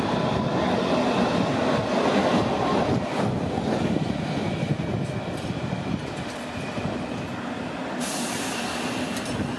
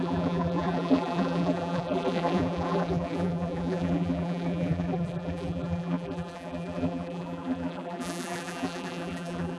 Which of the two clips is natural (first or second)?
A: first